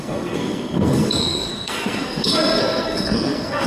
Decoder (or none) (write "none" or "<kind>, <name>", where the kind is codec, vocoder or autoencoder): codec, SNAC